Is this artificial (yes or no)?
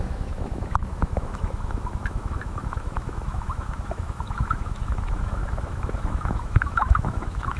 yes